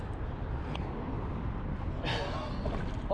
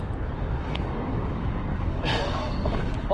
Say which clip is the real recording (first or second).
first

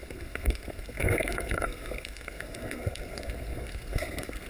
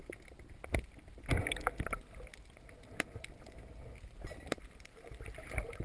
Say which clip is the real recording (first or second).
second